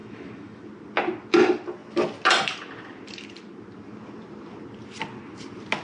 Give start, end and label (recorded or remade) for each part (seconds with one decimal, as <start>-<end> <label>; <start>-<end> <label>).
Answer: 0.0-0.6 remade; 0.6-5.8 recorded